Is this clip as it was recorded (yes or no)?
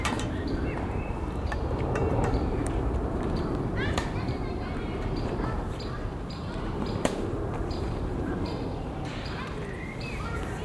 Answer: no